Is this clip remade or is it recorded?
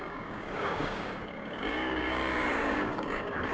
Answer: remade